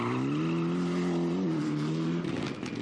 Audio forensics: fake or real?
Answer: real